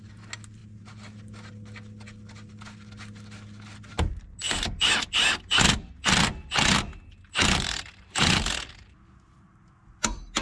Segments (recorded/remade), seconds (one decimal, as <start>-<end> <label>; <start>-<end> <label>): 0.0-3.9 recorded; 3.9-4.4 remade; 4.4-10.4 recorded